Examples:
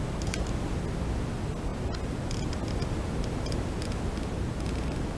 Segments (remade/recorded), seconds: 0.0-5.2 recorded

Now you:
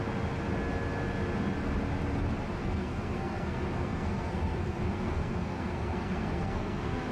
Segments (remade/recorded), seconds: 0.0-2.6 recorded; 2.6-7.1 remade

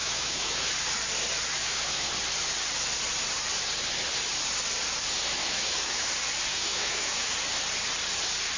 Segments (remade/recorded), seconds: 0.0-0.7 remade; 0.7-1.6 recorded; 1.6-2.1 remade; 2.1-5.4 recorded; 5.4-6.1 remade; 6.1-6.5 recorded; 6.5-7.3 remade; 7.3-8.6 recorded